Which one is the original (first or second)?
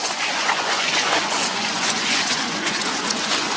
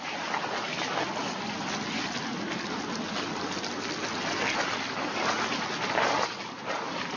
second